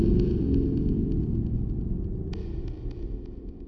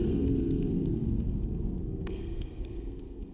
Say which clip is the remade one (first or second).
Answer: second